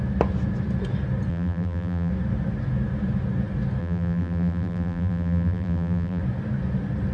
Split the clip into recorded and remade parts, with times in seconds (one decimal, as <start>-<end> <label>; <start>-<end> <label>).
0.0-1.3 recorded; 1.3-2.1 remade; 2.1-3.8 recorded; 3.8-6.2 remade; 6.2-7.1 recorded